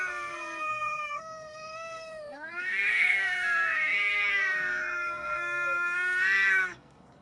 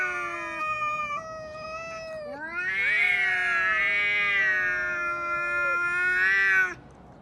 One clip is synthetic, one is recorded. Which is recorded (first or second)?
second